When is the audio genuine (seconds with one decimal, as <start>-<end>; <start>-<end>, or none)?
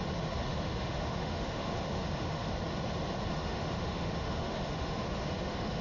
0.0-0.5; 2.5-3.3